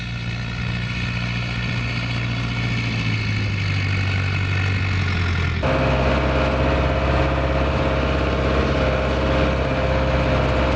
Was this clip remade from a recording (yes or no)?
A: no